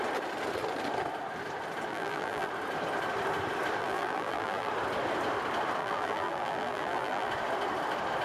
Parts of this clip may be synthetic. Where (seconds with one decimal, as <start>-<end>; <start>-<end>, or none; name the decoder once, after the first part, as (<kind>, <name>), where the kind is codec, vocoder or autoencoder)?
1.9-2.5 (vocoder, BigVGAN v2); 3.8-4.7; 5.8-7.3